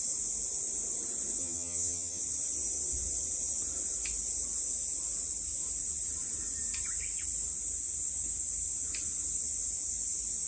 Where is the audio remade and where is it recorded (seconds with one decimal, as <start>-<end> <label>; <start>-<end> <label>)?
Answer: 0.0-1.4 recorded; 1.4-2.2 remade; 2.2-10.5 recorded